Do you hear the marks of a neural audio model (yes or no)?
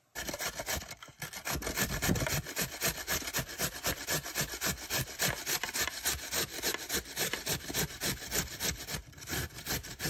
no